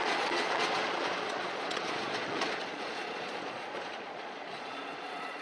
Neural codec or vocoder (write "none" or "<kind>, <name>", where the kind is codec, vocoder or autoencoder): vocoder, Vocos